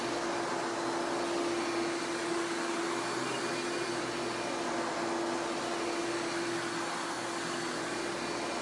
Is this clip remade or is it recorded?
recorded